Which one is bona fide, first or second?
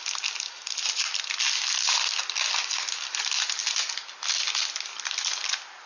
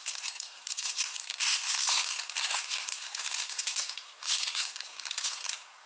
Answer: first